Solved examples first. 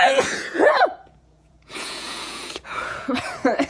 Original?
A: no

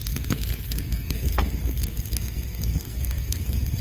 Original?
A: no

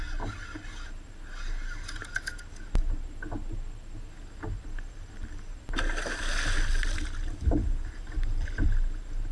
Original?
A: yes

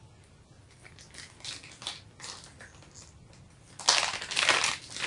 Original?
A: yes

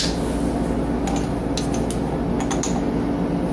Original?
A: yes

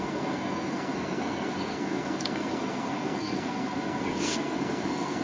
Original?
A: no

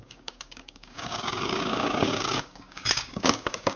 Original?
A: no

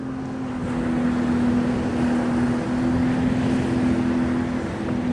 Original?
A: yes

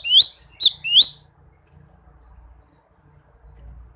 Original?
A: yes